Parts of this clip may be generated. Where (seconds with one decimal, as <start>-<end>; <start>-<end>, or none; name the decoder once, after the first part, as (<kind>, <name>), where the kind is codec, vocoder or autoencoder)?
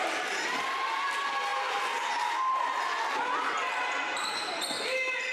none